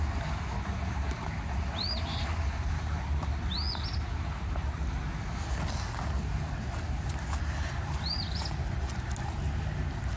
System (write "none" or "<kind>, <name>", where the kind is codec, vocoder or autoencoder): none